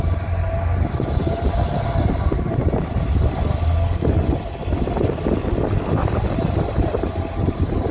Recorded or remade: recorded